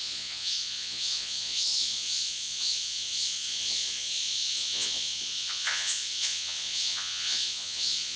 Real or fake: fake